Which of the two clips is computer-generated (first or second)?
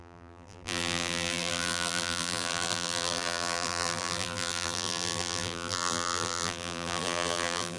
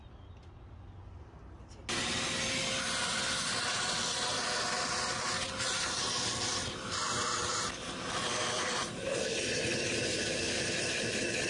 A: first